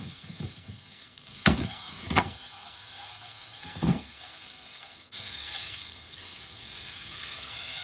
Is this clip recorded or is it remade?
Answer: remade